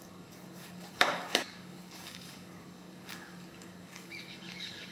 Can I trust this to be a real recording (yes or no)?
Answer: no